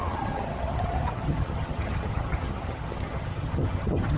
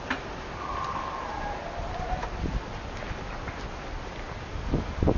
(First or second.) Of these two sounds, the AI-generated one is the first